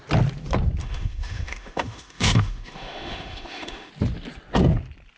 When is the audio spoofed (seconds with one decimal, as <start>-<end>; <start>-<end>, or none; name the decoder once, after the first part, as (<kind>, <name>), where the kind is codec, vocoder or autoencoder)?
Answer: 0.8-3.9 (autoencoder, DAC-VAE)